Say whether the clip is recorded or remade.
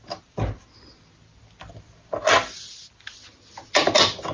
recorded